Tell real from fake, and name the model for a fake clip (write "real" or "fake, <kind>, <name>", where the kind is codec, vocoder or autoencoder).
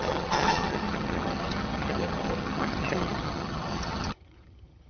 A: fake, vocoder, HiFi-GAN